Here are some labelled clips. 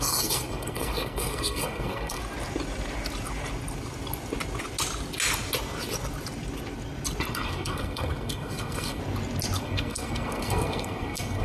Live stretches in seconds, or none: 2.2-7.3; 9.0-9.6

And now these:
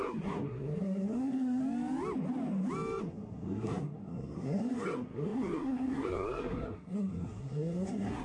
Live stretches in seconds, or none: 1.6-3.0

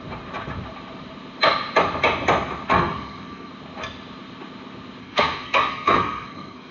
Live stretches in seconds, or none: 0.0-2.7; 3.5-5.0

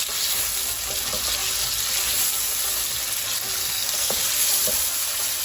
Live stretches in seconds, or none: 0.0-3.6; 4.2-5.4